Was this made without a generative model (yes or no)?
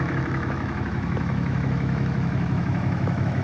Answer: no